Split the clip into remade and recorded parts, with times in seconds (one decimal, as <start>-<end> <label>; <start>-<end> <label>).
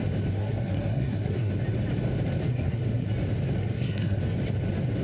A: 0.0-0.4 recorded; 0.4-1.5 remade; 1.5-2.5 recorded; 2.5-3.1 remade; 3.1-3.6 recorded; 3.6-4.2 remade; 4.2-5.0 recorded